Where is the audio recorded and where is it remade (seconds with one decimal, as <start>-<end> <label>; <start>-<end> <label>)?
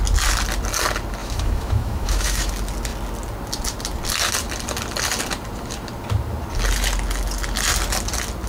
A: 0.0-1.2 recorded; 1.2-2.5 remade; 2.5-8.5 recorded